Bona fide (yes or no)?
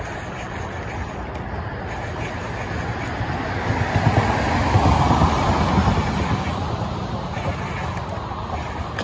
yes